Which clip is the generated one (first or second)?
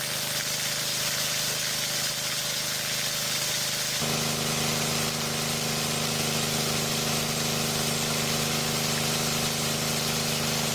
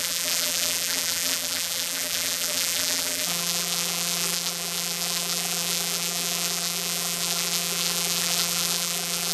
second